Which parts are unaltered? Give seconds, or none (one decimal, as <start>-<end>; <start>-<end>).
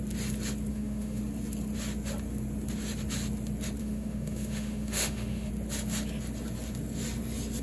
0.0-0.7; 1.2-3.8; 5.5-7.6